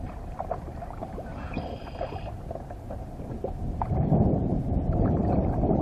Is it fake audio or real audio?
fake